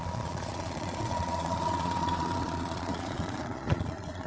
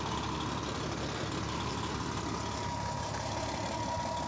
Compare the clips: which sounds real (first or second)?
second